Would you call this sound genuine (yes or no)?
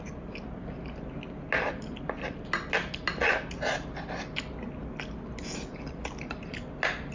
yes